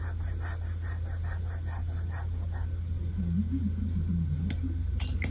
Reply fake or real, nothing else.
real